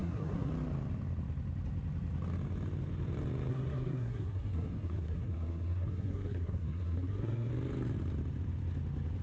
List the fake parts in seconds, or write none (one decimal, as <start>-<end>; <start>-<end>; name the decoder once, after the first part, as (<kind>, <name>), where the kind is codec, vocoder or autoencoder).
0.0-0.5 (codec, SNAC); 3.5-7.5